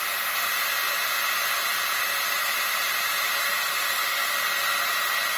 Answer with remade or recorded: recorded